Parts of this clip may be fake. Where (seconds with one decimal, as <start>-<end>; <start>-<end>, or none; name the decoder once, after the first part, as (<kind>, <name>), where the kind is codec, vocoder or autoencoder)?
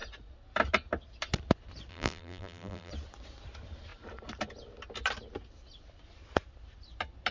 1.9-2.9 (vocoder, BigVGAN v2)